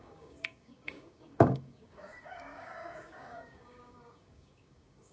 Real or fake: fake